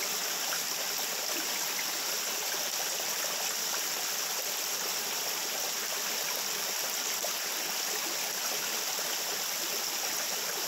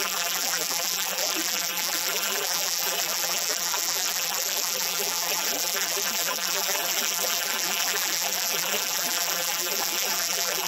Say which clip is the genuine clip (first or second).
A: first